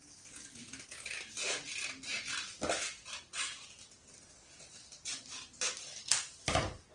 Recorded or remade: recorded